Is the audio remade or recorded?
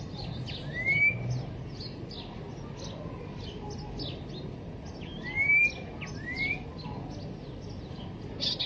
recorded